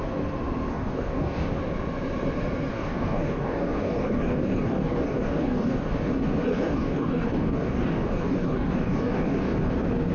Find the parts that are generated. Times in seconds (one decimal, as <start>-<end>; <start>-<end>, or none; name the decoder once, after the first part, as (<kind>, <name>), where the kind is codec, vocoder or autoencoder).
0.7-1.6 (codec, DAC); 2.7-6.1; 6.5-9.7